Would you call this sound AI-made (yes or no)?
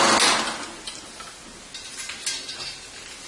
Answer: no